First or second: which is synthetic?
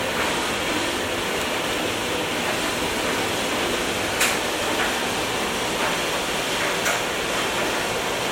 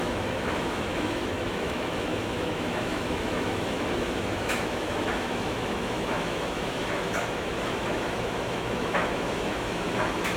second